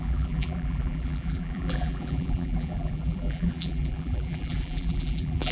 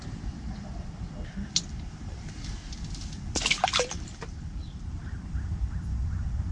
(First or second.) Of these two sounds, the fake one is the first